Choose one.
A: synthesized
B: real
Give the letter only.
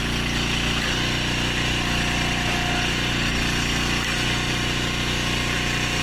B